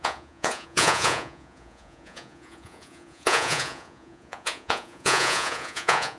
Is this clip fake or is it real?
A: fake